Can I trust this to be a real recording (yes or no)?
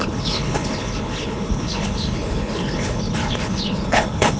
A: no